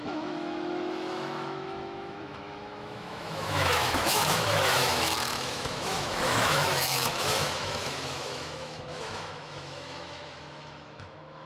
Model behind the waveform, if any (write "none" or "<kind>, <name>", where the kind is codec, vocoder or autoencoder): autoencoder, DAC-VAE